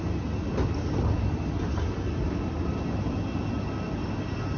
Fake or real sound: real